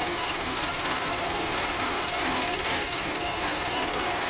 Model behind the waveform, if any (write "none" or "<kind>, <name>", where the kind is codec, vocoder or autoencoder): codec, DAC